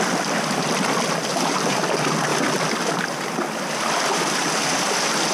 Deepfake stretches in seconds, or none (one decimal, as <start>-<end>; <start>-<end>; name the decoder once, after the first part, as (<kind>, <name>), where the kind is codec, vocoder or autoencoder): 1.3-1.8 (vocoder, BigVGAN v2)